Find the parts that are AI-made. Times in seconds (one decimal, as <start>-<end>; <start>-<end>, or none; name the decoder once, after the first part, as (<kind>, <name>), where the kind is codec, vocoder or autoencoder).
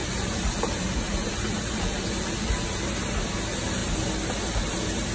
0.0-2.9 (vocoder, BigVGAN v2)